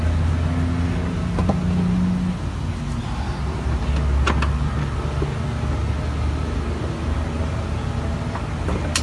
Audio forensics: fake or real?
real